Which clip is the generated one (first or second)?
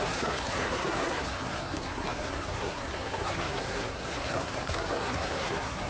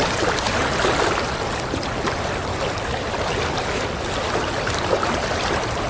first